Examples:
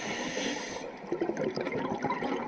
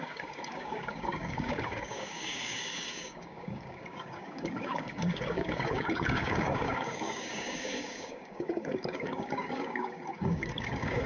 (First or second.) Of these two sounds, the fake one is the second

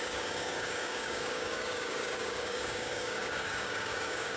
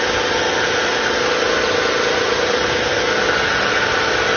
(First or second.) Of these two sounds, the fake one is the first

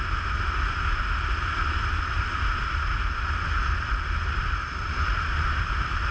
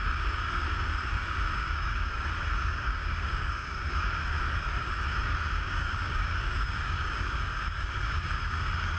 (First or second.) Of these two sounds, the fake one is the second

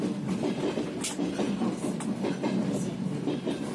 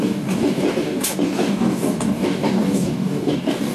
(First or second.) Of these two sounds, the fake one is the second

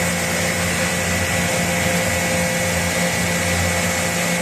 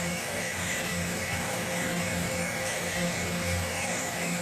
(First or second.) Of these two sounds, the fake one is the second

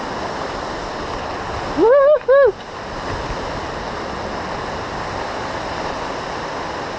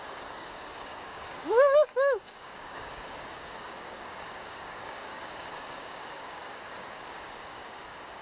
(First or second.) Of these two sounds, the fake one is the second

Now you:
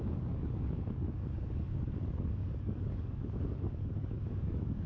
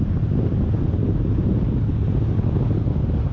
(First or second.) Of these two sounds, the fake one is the first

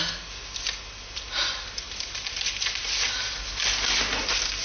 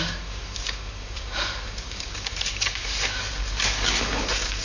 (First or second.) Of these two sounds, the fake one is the second